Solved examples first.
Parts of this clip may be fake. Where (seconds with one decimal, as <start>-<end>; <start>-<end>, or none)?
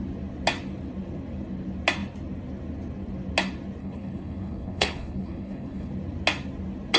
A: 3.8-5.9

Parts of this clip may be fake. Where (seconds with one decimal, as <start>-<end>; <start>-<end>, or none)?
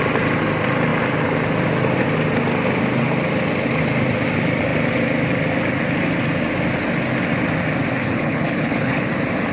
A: 8.0-9.1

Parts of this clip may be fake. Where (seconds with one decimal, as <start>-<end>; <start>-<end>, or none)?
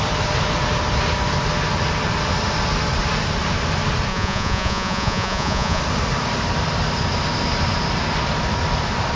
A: 4.1-5.8